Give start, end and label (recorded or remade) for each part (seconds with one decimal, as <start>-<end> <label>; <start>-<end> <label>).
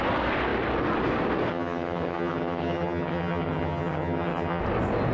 0.0-1.5 recorded; 1.5-4.6 remade; 4.6-5.1 recorded